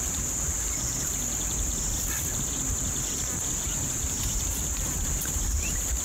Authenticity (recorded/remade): remade